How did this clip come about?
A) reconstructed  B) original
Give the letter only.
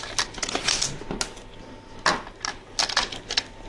B